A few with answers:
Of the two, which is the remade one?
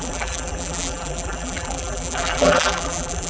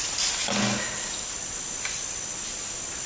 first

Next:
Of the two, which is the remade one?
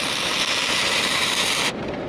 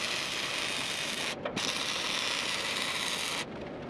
first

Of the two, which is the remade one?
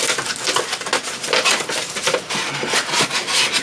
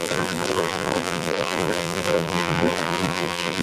second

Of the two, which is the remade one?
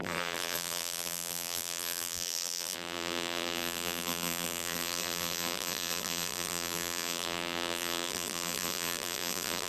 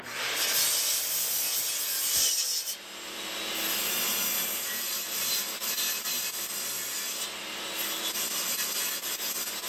first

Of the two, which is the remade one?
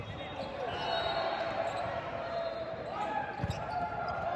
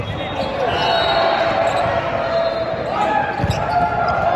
first